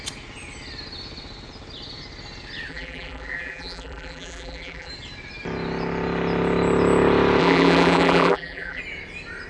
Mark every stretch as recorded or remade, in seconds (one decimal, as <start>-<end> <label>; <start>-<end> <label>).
0.0-2.7 recorded; 2.7-4.9 remade; 4.9-7.4 recorded; 7.4-8.8 remade; 8.8-9.5 recorded